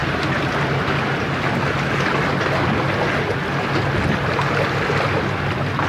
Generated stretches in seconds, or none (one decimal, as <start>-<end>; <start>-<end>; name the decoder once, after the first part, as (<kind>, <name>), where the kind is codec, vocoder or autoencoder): 0.0-0.6 (vocoder, BigVGAN v2)